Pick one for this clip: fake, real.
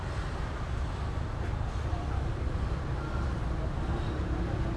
real